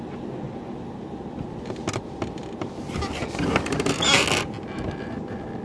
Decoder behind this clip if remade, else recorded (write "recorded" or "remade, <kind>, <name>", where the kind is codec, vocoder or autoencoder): recorded